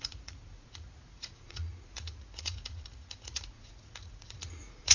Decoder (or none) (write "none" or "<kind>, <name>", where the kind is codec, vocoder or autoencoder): vocoder, Vocos